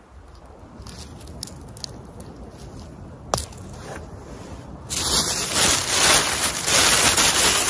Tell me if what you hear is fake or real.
real